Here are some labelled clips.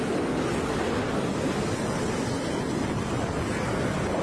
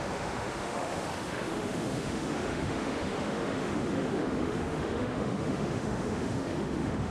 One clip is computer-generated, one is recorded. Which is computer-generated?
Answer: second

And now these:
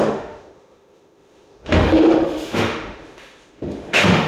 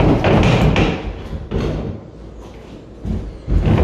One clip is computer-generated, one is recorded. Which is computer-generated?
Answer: first